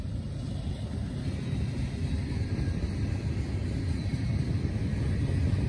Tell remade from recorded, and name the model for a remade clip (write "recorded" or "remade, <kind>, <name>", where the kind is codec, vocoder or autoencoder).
recorded